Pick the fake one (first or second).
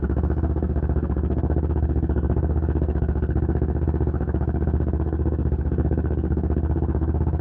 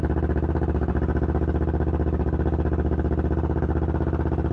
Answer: first